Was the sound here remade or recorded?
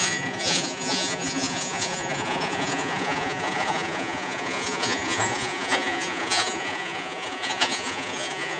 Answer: remade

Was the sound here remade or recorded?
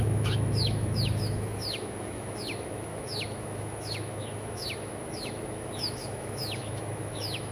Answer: remade